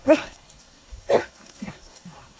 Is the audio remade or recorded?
remade